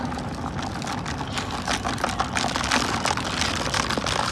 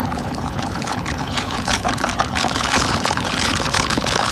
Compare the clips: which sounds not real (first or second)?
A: second